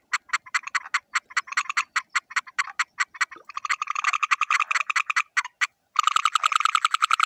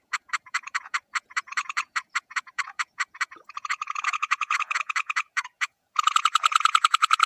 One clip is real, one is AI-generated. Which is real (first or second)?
first